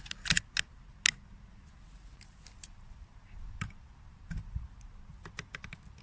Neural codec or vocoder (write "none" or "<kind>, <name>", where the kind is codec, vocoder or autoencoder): none